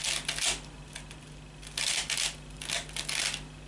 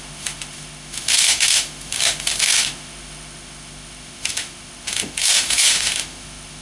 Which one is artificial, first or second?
second